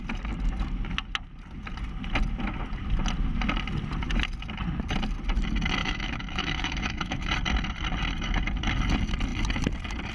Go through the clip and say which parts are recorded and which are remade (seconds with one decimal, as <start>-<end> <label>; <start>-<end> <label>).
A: 0.0-5.8 recorded; 5.8-7.3 remade; 7.3-10.1 recorded